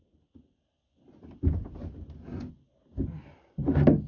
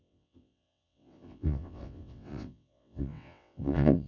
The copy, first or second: second